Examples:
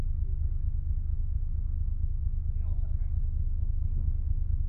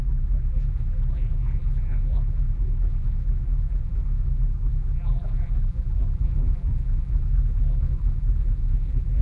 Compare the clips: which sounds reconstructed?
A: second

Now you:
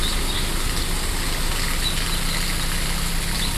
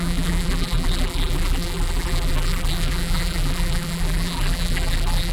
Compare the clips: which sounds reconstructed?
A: second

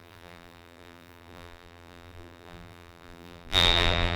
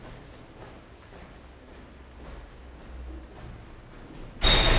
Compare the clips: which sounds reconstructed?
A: first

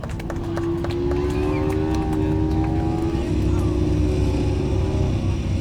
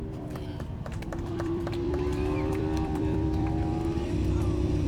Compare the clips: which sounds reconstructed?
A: second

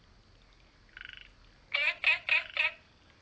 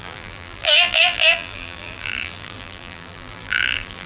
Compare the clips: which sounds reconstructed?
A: second